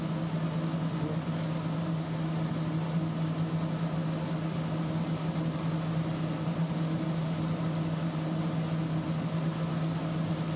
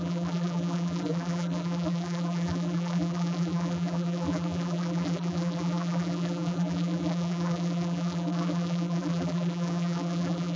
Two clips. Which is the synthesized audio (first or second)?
second